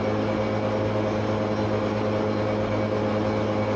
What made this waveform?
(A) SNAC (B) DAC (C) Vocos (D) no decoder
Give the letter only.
D